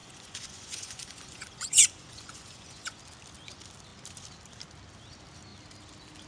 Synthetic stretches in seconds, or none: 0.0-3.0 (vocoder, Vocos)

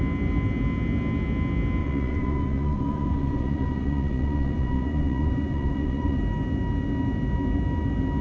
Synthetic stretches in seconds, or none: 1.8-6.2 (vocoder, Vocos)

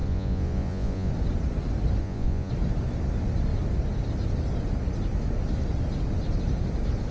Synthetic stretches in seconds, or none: 0.0-1.1 (vocoder, Vocos); 2.0-2.5